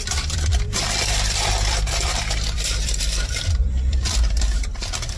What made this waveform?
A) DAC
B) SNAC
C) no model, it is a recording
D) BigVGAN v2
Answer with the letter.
D